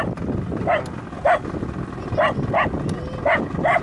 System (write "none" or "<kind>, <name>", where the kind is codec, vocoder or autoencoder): none